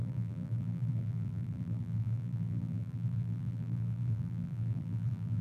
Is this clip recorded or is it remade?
remade